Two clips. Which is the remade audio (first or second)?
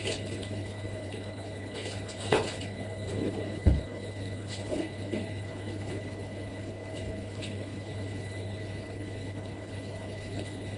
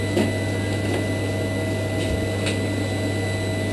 first